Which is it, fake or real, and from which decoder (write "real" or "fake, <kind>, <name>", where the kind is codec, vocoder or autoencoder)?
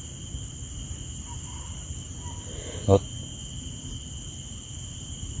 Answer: real